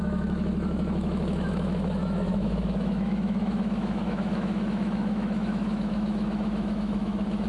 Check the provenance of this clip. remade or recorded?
remade